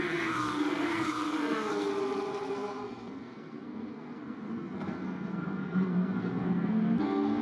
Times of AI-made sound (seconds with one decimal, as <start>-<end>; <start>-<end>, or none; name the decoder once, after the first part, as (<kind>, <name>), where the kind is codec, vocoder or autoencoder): 0.0-1.9 (codec, SNAC); 2.5-7.4